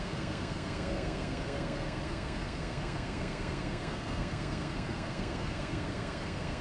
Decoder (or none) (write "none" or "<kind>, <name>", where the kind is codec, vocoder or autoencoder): codec, SNAC